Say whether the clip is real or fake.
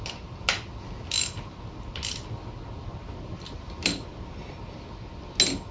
real